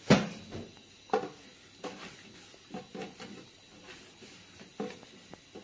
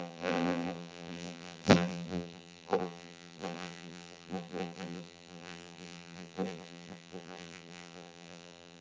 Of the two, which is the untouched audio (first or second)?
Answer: first